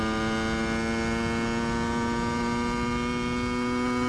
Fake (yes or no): no